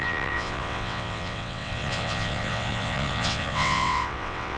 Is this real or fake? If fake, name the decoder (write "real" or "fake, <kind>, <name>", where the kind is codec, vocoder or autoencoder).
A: fake, vocoder, WaveNeXt